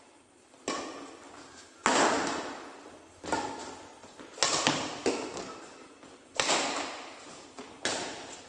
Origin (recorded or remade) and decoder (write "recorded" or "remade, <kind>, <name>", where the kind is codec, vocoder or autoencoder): recorded